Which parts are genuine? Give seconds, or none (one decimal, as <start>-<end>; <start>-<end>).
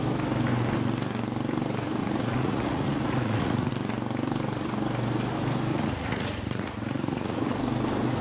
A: 0.0-2.0; 3.7-5.7; 7.5-8.2